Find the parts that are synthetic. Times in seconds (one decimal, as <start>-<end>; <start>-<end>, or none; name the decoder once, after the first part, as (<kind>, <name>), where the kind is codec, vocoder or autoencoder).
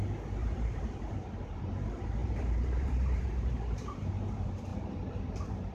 0.4-1.1 (vocoder, BigVGAN v2); 2.2-4.1; 4.7-5.7